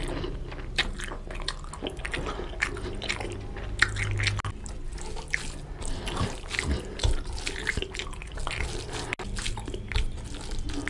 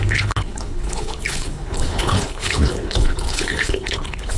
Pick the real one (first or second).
first